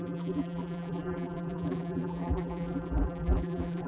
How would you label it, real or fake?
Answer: fake